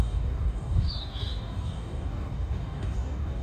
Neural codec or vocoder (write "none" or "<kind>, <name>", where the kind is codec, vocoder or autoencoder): codec, DAC